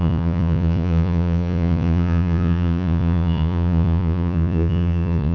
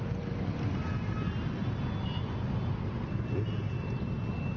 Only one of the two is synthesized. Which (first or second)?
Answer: first